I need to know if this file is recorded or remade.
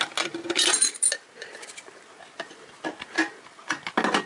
recorded